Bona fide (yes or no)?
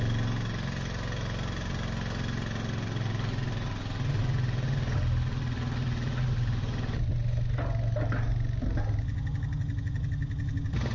yes